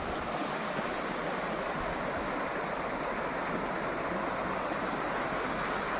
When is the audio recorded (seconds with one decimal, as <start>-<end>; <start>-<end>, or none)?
0.0-0.4; 1.0-6.0